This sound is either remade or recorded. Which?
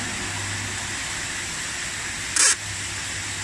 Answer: recorded